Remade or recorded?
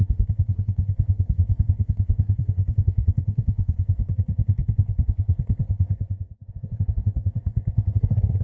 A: remade